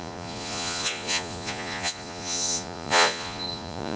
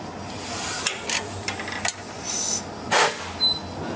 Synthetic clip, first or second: first